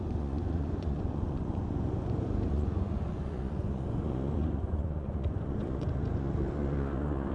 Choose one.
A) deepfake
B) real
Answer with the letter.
A